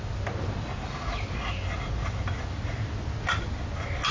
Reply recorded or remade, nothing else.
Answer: recorded